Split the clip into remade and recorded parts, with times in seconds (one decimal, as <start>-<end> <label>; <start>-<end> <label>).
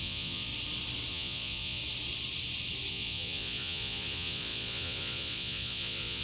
0.0-0.5 remade; 0.5-1.1 recorded; 1.1-1.8 remade; 1.8-2.9 recorded; 2.9-6.2 remade